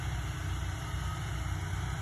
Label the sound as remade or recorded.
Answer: recorded